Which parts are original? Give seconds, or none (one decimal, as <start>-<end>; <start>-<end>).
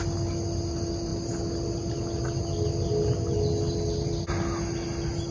0.0-5.3